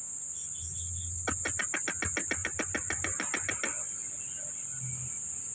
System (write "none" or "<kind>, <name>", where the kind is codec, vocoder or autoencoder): none